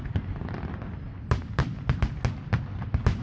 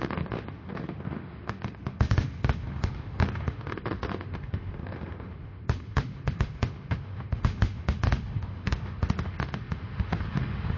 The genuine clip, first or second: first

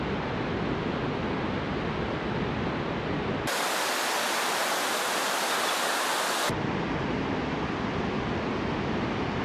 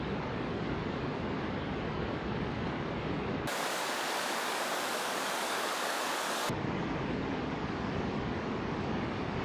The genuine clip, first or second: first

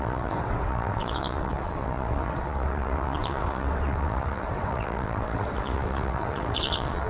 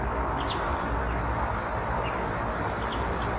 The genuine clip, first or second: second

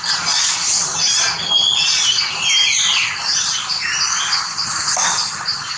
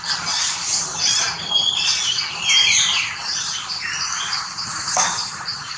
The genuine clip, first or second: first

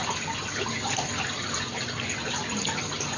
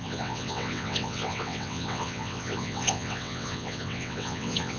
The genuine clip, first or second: first